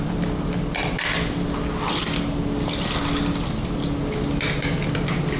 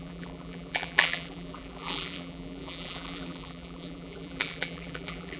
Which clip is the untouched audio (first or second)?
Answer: first